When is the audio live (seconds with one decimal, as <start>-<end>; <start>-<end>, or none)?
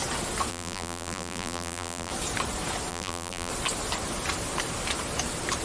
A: 0.0-0.5; 2.1-2.9; 3.5-5.6